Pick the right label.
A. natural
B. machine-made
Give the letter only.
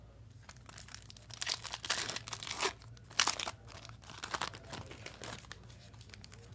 A